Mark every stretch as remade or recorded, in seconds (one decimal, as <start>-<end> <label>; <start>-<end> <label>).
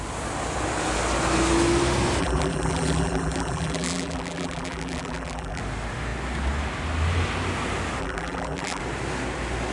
0.0-2.2 recorded; 2.2-5.6 remade; 5.6-8.0 recorded; 8.0-8.8 remade; 8.8-9.7 recorded